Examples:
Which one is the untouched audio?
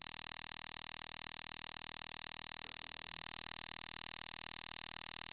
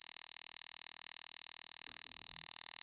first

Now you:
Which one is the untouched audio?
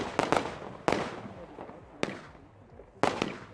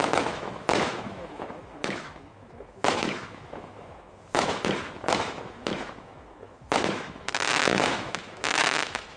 first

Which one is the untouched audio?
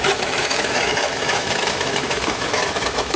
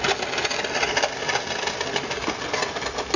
second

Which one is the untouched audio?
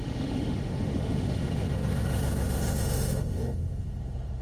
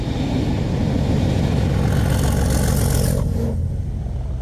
second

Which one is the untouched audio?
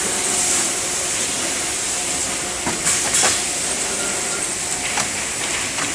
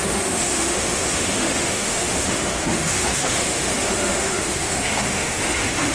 first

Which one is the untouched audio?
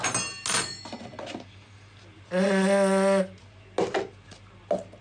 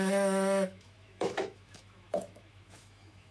first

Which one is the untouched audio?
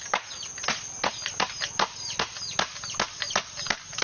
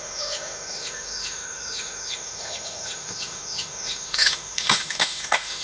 first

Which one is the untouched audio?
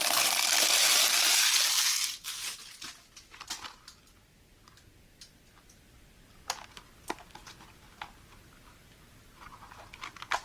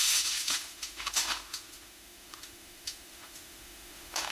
first